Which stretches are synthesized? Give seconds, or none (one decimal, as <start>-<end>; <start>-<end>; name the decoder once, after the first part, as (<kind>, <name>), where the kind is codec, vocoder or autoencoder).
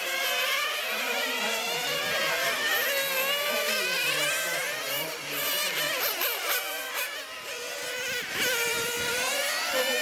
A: 0.0-4.2 (vocoder, BigVGAN v2); 4.9-10.0